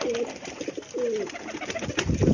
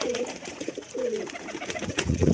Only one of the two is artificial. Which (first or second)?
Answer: second